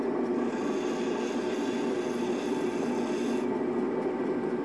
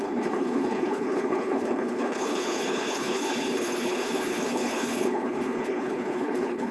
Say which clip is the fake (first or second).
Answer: second